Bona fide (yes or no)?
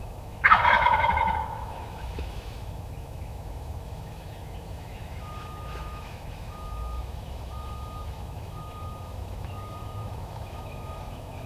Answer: no